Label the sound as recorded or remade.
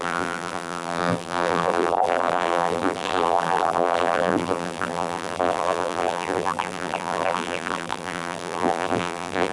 remade